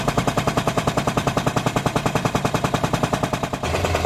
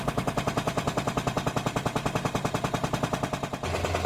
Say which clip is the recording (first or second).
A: second